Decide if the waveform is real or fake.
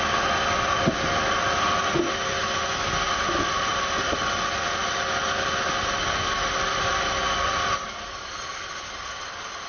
real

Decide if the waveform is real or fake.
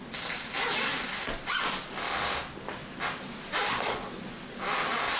real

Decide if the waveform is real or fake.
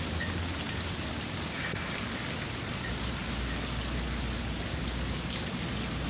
real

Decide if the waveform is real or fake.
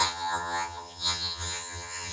fake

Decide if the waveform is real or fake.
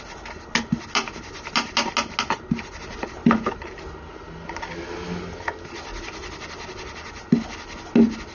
real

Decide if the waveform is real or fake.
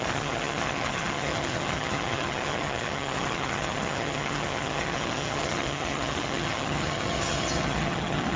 fake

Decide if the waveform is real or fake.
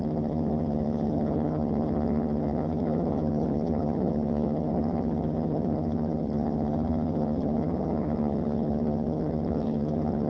fake